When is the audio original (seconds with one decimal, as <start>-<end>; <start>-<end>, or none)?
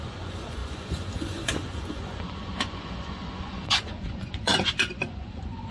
none